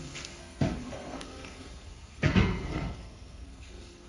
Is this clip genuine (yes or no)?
no